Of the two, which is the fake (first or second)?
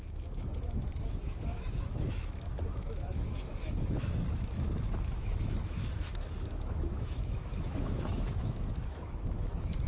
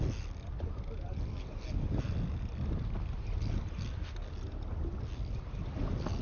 first